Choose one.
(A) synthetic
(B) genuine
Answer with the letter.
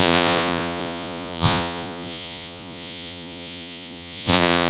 A